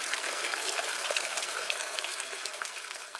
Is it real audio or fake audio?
fake